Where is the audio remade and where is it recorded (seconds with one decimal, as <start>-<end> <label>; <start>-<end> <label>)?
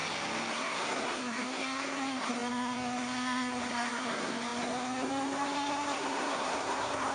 0.0-0.5 recorded; 0.5-7.1 remade